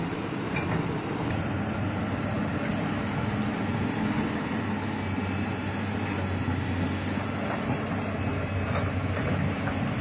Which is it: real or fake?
real